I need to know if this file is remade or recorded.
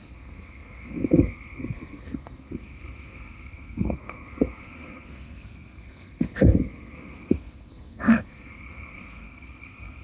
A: remade